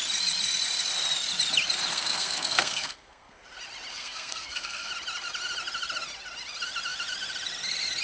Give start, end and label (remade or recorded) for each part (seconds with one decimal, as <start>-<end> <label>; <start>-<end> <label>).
0.0-1.9 recorded; 1.9-3.4 remade; 3.4-3.9 recorded; 3.9-4.9 remade; 4.9-8.0 recorded

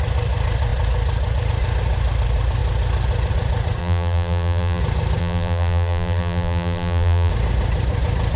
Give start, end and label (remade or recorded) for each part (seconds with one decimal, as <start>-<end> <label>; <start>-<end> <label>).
0.0-3.8 recorded; 3.8-4.8 remade; 4.8-5.2 recorded; 5.2-7.3 remade; 7.3-8.4 recorded